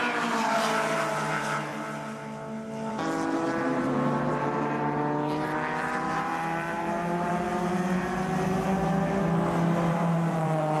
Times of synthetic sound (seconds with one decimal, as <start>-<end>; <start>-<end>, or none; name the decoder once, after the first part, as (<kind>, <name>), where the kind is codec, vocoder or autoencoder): 0.0-1.7 (vocoder, BigVGAN v2); 2.9-7.3; 9.9-10.8